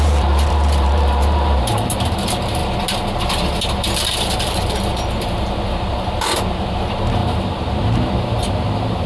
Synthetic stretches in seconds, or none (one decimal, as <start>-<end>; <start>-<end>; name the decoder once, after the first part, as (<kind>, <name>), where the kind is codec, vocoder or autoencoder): 0.0-2.6 (vocoder, BigVGAN v2); 3.9-9.1